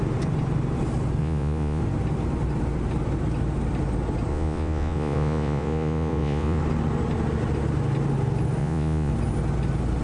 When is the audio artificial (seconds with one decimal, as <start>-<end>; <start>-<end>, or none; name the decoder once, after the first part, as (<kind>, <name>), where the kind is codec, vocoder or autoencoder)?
1.2-1.8 (vocoder, Vocos); 4.3-6.6; 8.6-9.1